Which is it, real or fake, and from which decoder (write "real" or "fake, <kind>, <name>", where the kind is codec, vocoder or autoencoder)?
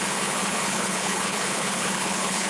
fake, codec, HILCodec